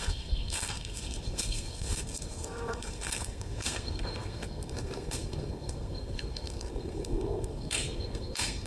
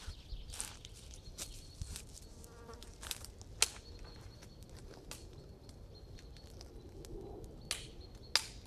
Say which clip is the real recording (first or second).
second